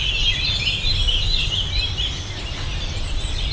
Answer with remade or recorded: recorded